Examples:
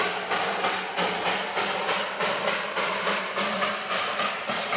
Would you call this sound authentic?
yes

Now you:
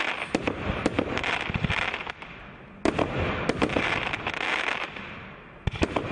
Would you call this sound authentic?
yes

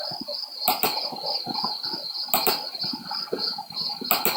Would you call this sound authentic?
yes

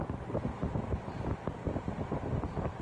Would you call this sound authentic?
yes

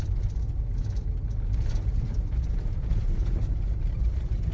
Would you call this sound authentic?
yes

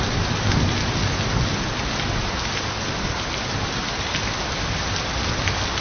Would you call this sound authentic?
yes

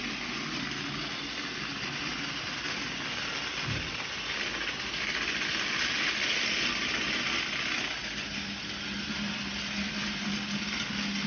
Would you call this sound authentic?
yes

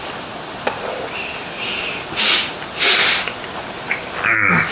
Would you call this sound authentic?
yes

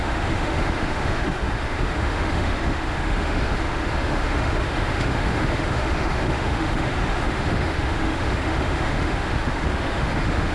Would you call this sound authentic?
no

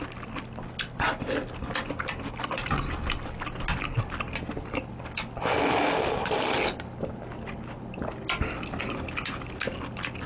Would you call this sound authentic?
yes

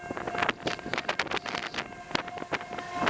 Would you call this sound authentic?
yes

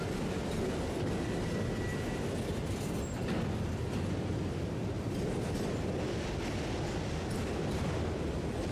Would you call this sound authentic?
yes